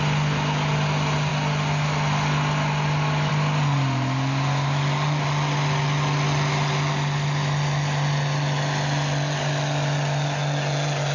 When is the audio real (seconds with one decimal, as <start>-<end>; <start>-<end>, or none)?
0.0-11.1